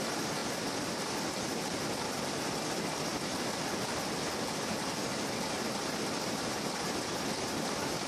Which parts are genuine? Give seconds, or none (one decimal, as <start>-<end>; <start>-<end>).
0.0-8.1